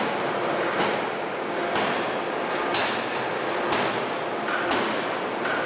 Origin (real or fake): real